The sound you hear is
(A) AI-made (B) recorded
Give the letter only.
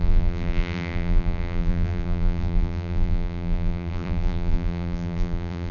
A